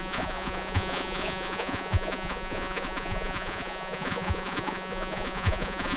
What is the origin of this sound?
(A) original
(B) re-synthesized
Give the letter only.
B